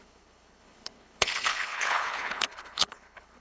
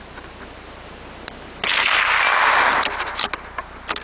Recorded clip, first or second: second